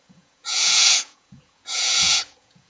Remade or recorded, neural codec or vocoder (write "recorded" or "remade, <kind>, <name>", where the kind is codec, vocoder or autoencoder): remade, vocoder, Vocos